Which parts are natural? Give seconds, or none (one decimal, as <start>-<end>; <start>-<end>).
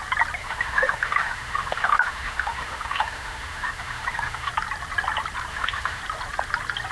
0.0-0.4; 4.5-5.5; 6.0-6.9